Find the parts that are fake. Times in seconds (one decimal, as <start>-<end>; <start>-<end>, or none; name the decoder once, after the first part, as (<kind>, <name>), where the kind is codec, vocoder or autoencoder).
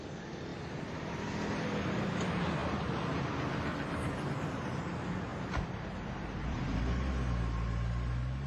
2.6-3.2 (vocoder, BigVGAN v2); 3.7-4.8